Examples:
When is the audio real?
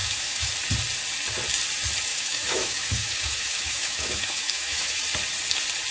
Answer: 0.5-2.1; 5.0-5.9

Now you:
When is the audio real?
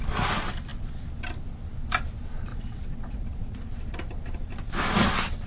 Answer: 0.0-2.5; 3.6-5.5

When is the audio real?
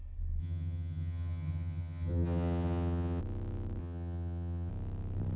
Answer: 0.0-0.4; 3.2-3.8; 4.7-5.4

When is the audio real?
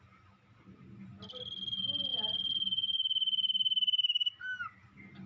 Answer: 0.0-5.3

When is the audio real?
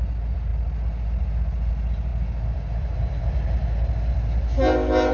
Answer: 0.0-5.1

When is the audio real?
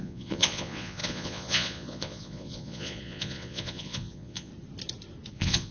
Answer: 4.5-5.3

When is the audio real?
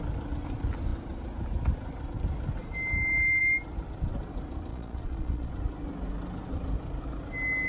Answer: 0.0-4.7; 5.5-7.7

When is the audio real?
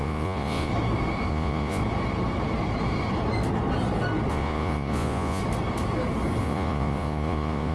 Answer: 0.7-1.3; 1.8-4.3; 5.4-6.4